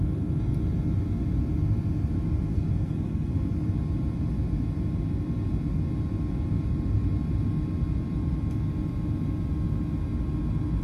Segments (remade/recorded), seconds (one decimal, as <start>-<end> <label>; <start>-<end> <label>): 0.0-2.5 recorded; 2.5-3.3 remade; 3.3-10.8 recorded